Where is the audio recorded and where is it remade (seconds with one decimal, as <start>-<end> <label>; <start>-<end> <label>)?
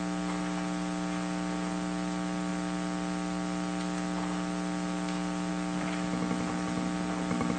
0.0-7.6 recorded